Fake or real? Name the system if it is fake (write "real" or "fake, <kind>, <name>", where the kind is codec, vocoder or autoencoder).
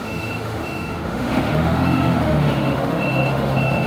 fake, autoencoder, DAC-VAE